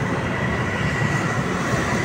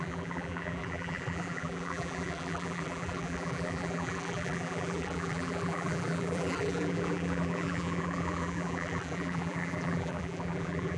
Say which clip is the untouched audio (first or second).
first